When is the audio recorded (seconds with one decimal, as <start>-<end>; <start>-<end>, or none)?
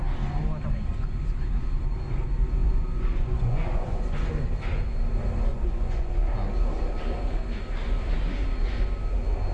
0.0-2.6; 4.3-5.5; 6.1-9.5